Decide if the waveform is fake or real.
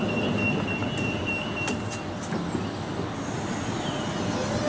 real